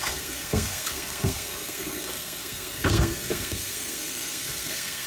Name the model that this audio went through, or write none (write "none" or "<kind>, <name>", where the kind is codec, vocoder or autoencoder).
codec, SNAC